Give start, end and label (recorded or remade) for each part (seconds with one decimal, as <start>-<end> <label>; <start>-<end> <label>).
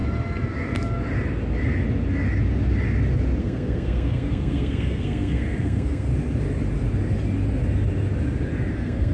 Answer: 0.0-3.4 recorded; 3.4-6.1 remade; 6.1-8.7 recorded; 8.7-9.1 remade